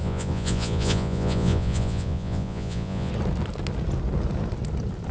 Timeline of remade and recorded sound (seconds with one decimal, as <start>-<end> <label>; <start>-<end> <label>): 0.0-3.1 remade; 3.1-5.1 recorded